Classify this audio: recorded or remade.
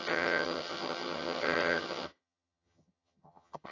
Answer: remade